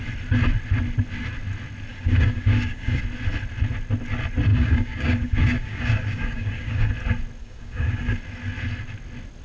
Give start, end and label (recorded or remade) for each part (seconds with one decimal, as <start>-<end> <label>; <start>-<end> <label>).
0.0-1.9 recorded; 1.9-3.0 remade; 3.0-4.5 recorded; 4.5-6.9 remade; 6.9-7.4 recorded; 7.4-8.2 remade; 8.2-9.4 recorded